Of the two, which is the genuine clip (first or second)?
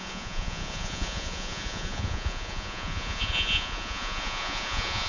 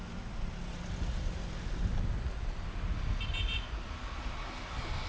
second